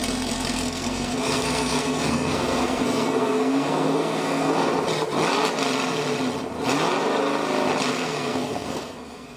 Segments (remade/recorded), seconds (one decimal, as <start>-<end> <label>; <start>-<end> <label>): 0.0-4.7 remade; 4.7-7.9 recorded; 7.9-9.4 remade